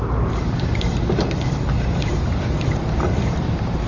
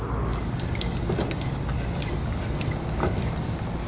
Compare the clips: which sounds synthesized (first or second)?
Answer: first